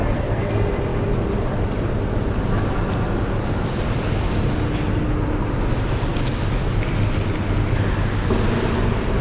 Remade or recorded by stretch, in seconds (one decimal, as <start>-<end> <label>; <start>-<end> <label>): 0.0-0.5 remade; 0.5-9.2 recorded